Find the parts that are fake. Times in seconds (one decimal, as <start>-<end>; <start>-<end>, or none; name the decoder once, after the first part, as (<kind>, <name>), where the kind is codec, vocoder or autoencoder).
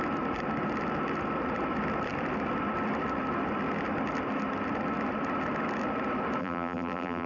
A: 6.4-7.3 (vocoder, BigVGAN v2)